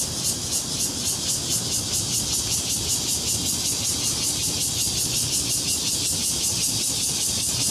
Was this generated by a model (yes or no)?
no